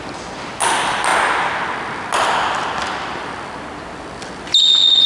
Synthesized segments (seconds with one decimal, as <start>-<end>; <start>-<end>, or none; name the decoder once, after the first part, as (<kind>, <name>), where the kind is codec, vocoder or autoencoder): none